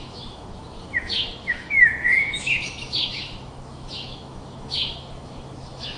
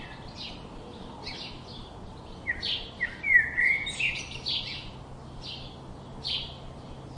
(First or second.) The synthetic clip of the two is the first